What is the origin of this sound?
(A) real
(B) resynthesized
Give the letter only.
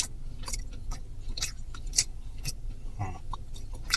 A